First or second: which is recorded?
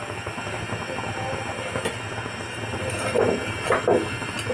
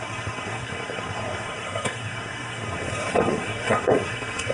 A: first